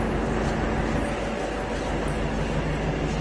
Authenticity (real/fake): real